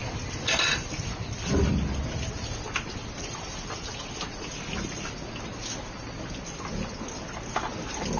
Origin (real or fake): real